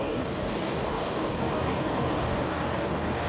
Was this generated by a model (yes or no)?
yes